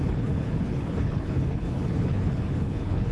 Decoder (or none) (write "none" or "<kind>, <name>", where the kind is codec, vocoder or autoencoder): codec, HILCodec